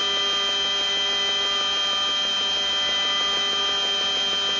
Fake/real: real